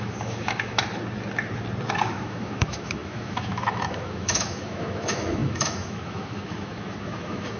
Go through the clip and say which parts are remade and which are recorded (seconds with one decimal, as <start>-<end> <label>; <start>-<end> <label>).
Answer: 0.0-0.8 remade; 0.8-2.1 recorded; 2.1-7.6 remade